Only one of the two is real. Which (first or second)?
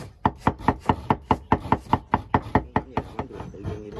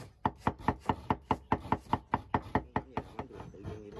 second